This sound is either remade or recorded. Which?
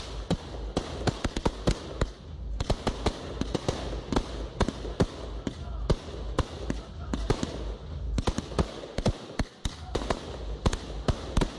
recorded